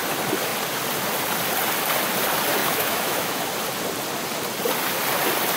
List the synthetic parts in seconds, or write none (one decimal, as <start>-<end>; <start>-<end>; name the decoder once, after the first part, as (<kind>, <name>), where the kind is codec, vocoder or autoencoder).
2.6-3.4 (autoencoder, DAC-VAE)